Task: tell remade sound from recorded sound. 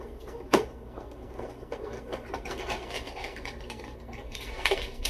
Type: remade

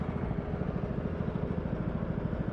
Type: recorded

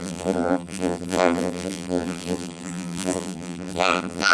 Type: remade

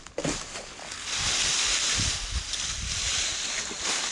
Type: recorded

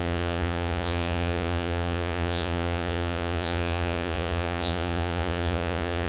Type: remade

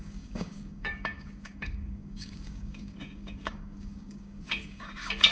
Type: remade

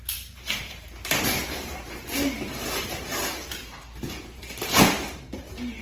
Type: remade